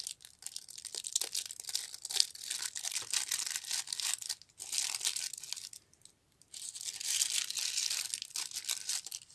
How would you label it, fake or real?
real